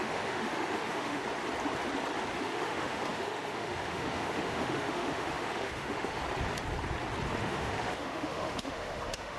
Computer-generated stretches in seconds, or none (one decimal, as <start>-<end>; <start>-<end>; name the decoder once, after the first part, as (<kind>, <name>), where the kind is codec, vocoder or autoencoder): 0.0-1.2 (autoencoder, DAC-VAE); 2.4-6.2; 7.4-9.4